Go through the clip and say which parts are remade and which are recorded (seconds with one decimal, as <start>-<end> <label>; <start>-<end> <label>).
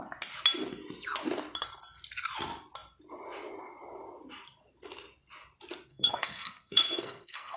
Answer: 0.0-5.9 recorded; 5.9-7.6 remade